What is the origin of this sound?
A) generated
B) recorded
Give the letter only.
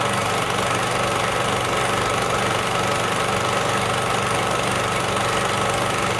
B